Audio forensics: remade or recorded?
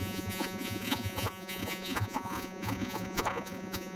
remade